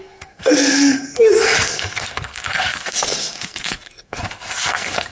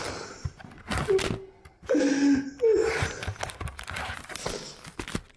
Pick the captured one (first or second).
second